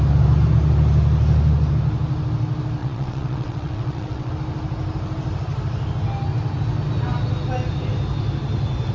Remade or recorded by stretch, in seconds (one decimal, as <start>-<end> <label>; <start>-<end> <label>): 0.0-2.8 recorded; 2.8-4.3 remade; 4.3-8.9 recorded